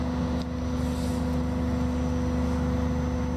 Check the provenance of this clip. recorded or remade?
recorded